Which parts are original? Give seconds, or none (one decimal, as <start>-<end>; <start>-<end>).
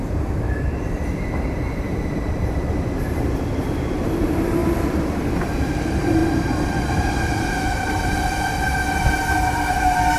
none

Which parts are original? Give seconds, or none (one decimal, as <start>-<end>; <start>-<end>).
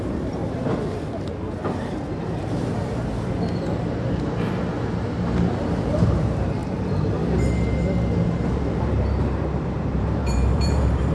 0.4-2.7; 6.6-8.2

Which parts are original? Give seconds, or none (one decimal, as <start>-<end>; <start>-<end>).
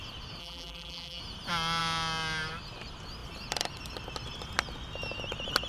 0.0-0.4; 1.2-5.7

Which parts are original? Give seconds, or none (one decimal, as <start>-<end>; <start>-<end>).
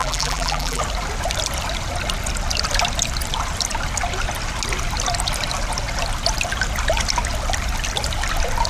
0.8-8.7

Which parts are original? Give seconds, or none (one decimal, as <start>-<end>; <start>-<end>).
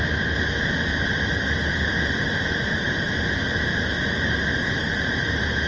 0.0-0.9; 4.3-5.7